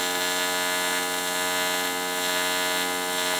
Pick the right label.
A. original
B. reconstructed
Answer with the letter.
A